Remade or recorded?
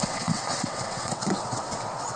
remade